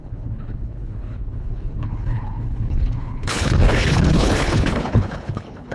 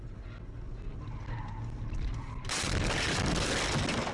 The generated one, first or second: first